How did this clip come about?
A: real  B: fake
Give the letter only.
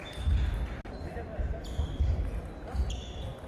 A